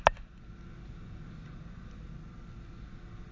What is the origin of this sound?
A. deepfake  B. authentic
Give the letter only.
B